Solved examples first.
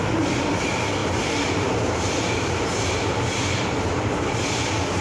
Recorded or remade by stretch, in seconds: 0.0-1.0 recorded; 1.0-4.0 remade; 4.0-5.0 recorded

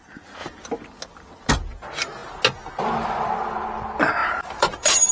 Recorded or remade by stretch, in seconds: 0.0-4.2 recorded; 4.2-5.1 remade

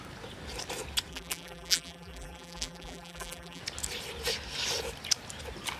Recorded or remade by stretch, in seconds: 0.0-1.1 recorded; 1.1-3.6 remade; 3.6-5.8 recorded

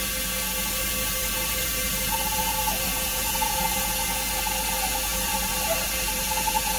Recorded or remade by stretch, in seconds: 0.0-0.8 recorded; 0.8-3.9 remade; 3.9-5.1 recorded; 5.1-6.3 remade; 6.3-6.8 recorded

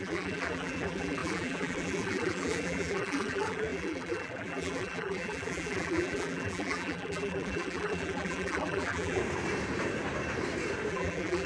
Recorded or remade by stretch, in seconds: 0.0-9.2 remade; 9.2-10.9 recorded; 10.9-11.5 remade

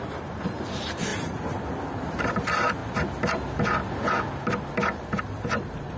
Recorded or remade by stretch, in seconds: 0.0-1.1 remade; 1.1-2.1 recorded; 2.1-2.8 remade; 2.8-5.2 recorded; 5.2-6.0 remade

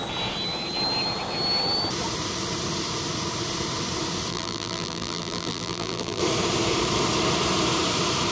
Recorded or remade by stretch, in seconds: 0.0-4.3 recorded; 4.3-6.2 remade; 6.2-8.3 recorded

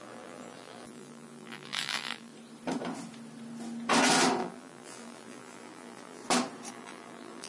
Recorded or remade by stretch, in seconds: 0.0-2.3 remade; 2.3-4.4 recorded; 4.4-6.2 remade; 6.2-6.7 recorded; 6.7-7.5 remade